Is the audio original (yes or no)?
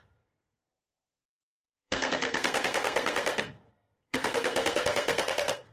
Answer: no